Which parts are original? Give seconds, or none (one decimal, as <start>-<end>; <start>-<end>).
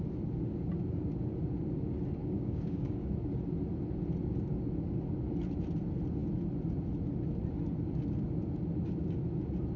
0.0-2.2; 3.1-9.8